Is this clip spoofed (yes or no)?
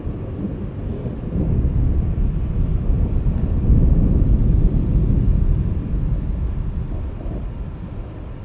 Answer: yes